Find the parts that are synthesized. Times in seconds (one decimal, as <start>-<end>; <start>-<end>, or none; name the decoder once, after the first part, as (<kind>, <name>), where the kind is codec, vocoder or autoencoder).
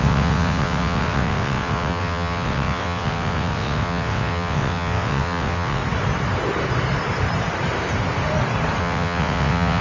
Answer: 0.0-5.8 (vocoder, WaveNeXt); 8.8-9.8